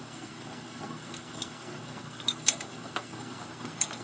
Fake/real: fake